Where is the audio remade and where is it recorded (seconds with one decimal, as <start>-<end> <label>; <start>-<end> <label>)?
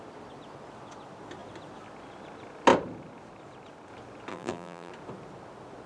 0.0-4.3 recorded; 4.3-4.9 remade; 4.9-5.9 recorded